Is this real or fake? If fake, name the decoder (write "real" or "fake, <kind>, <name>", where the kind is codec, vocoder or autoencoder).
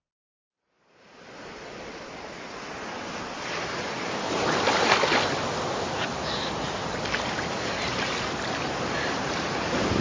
fake, vocoder, BigVGAN v2